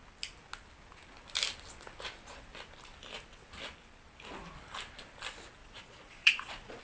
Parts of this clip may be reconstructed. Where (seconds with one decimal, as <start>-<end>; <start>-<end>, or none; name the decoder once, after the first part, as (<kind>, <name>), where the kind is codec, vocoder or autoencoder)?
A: 5.6-6.8 (vocoder, Vocos)